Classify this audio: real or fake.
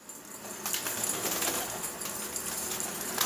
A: real